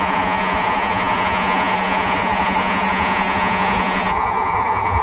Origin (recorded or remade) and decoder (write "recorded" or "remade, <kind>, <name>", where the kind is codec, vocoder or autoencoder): remade, vocoder, Vocos